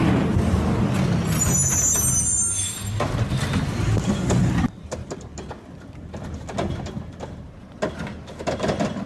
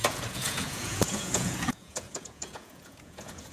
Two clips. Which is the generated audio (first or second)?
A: second